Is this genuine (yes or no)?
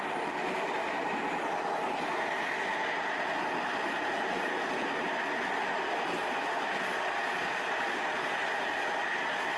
yes